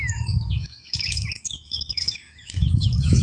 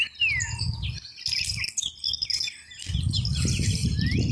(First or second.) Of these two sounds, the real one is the second